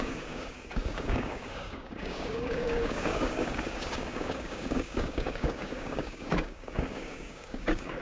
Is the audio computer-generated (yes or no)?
yes